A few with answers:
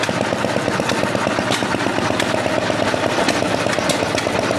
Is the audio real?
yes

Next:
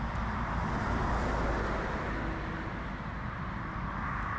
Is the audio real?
yes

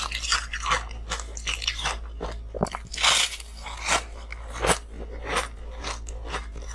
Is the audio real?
yes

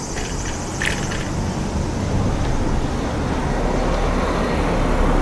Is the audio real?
yes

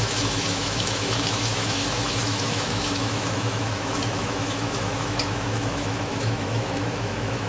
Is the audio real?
no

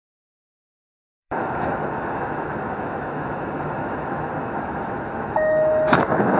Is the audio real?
no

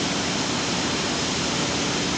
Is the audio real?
yes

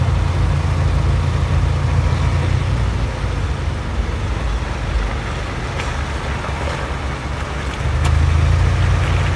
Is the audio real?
yes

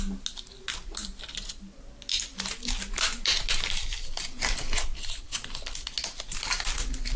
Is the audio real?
yes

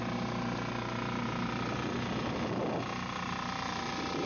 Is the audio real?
yes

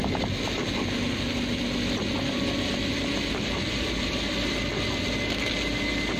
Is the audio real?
yes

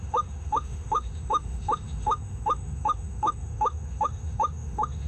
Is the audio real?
no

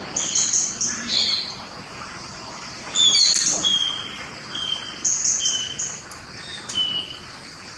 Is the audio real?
yes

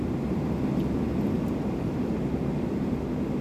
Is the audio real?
yes